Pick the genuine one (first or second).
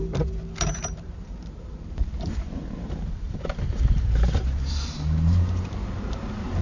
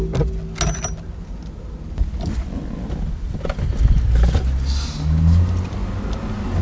second